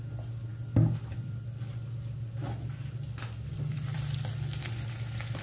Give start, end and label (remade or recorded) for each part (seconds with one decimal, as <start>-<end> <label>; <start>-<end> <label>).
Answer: 0.0-0.5 recorded; 0.5-1.6 remade; 1.6-3.5 recorded; 3.5-4.3 remade; 4.3-5.4 recorded